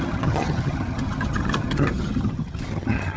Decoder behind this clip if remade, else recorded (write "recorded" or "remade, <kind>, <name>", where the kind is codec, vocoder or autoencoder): remade, vocoder, HiFi-GAN